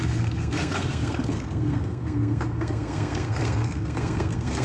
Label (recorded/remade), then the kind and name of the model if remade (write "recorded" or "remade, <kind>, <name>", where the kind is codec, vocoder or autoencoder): remade, codec, SNAC